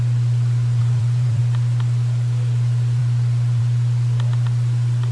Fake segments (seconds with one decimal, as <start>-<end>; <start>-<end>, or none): 0.8-1.4